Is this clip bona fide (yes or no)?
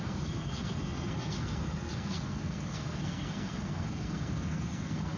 no